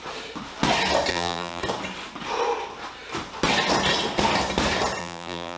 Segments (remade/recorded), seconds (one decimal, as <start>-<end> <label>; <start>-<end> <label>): 0.0-1.1 recorded; 1.1-1.6 remade; 1.6-5.0 recorded; 5.0-5.6 remade